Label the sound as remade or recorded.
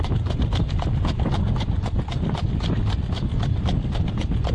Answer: recorded